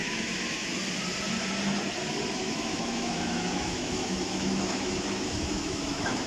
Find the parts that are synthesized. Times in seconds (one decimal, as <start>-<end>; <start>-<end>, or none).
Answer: 0.0-0.8; 2.4-6.3